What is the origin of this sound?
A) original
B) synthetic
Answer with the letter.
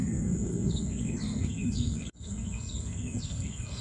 B